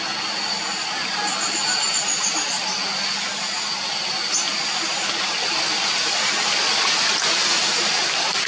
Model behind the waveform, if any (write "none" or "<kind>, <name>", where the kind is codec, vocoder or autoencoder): none